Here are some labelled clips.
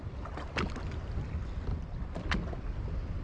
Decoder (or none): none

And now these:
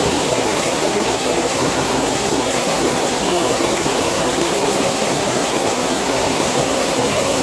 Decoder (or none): codec, SNAC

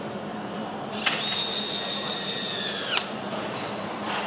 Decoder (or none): vocoder, BigVGAN v2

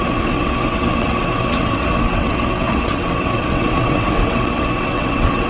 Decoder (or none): vocoder, WaveNeXt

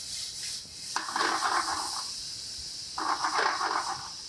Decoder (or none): none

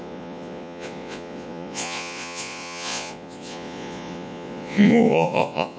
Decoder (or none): vocoder, Vocos